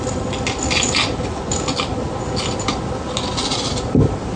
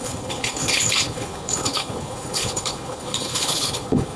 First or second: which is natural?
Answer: first